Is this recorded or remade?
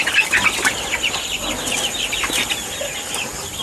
recorded